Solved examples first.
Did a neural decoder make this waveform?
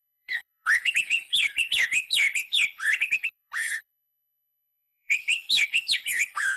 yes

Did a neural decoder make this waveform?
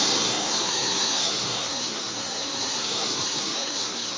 yes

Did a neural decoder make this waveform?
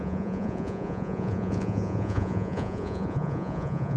yes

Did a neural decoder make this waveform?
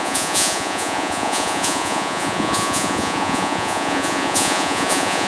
yes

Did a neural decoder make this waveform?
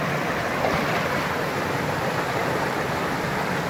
no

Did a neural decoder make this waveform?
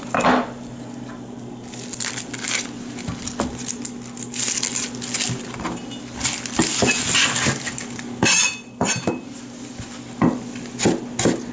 no